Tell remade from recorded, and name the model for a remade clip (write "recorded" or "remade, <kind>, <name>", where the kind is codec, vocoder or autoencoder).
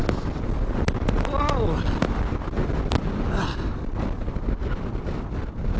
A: recorded